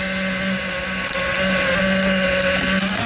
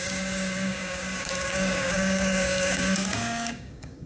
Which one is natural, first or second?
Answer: first